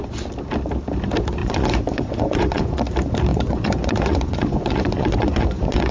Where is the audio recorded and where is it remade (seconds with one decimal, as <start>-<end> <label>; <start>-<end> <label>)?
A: 0.0-1.4 recorded; 1.4-2.8 remade; 2.8-3.3 recorded; 3.3-5.9 remade